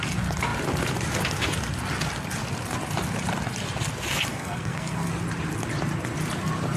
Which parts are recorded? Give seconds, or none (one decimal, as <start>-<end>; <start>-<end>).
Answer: 0.0-4.3; 5.1-6.8